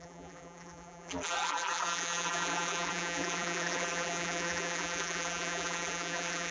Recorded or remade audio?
remade